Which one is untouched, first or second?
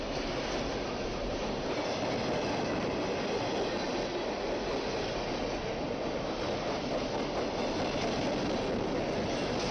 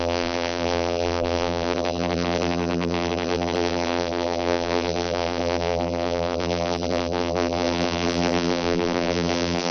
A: first